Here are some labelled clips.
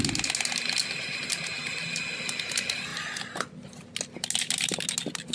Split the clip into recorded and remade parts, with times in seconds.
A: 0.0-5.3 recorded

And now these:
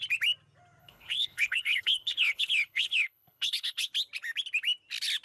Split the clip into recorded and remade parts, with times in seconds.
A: 0.0-0.8 recorded; 0.8-3.9 remade; 3.9-5.2 recorded

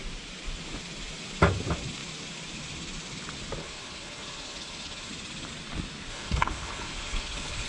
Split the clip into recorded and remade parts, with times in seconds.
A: 0.0-3.6 recorded; 3.6-5.1 remade; 5.1-6.1 recorded; 6.1-7.7 remade

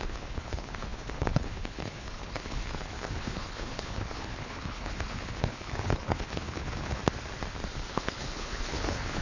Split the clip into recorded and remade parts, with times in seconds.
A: 0.0-7.0 remade; 7.0-7.9 recorded; 7.9-9.2 remade

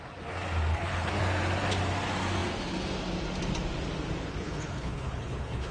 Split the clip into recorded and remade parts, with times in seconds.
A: 0.0-0.7 recorded; 0.7-1.2 remade; 1.2-4.3 recorded; 4.3-5.7 remade